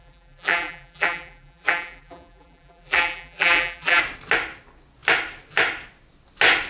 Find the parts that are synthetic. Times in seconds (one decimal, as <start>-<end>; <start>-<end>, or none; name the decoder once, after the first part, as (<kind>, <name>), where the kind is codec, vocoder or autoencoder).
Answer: 0.0-4.0 (vocoder, BigVGAN v2)